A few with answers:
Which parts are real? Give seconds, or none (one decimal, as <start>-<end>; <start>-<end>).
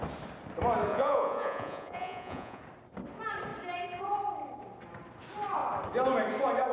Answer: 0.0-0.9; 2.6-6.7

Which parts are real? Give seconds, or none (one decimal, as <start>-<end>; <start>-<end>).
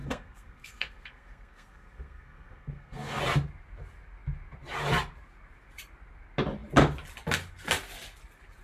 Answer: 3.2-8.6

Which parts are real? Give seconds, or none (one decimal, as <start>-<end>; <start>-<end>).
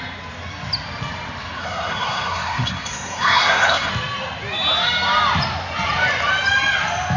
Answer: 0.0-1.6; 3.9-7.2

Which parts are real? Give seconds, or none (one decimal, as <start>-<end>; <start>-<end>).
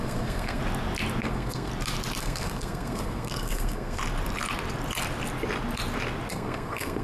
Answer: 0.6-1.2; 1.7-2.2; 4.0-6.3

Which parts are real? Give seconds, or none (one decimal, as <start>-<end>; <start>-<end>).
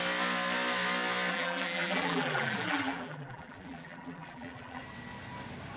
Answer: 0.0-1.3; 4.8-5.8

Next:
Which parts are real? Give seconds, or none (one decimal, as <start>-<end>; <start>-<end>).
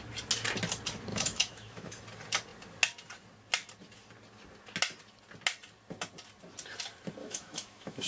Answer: 0.0-1.1; 2.0-7.2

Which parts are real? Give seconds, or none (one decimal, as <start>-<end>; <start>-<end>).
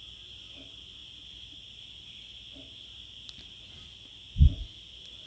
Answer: 0.0-5.3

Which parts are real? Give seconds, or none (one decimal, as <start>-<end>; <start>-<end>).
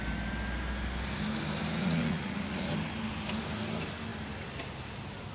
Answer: 0.0-1.8; 2.7-5.3